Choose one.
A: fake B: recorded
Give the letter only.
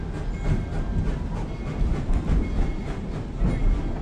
B